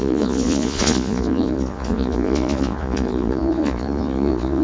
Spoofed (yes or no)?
yes